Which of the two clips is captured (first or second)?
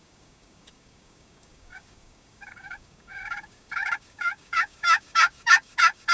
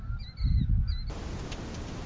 second